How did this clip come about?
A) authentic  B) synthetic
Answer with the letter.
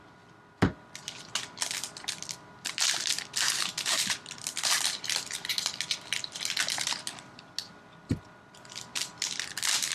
A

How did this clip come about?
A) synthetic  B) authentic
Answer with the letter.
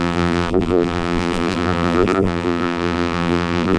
A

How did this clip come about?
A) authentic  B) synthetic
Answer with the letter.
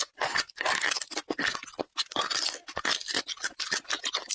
A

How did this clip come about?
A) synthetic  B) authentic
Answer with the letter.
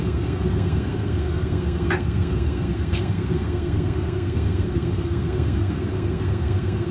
A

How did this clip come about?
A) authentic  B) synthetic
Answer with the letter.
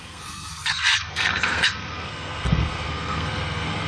B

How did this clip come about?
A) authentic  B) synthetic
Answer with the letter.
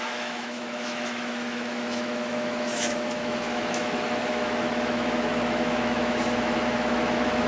B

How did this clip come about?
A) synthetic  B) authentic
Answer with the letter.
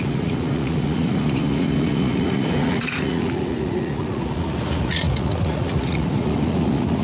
A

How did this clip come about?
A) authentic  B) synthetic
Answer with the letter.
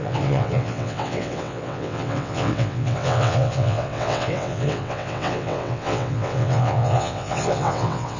B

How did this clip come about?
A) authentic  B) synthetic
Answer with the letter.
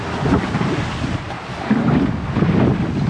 A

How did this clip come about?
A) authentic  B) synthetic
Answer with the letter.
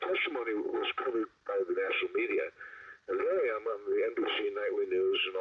A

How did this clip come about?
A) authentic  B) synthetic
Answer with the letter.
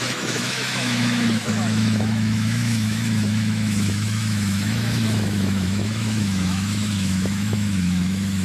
B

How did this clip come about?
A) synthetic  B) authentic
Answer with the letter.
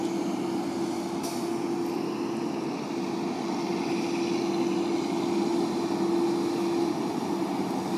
B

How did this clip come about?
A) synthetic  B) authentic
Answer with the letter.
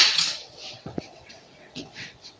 A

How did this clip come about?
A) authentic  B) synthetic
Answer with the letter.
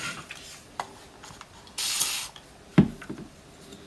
A